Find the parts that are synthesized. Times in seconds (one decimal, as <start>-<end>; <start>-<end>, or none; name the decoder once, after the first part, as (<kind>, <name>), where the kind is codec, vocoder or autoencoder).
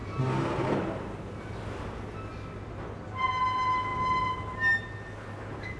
0.0-0.7 (vocoder, BigVGAN v2)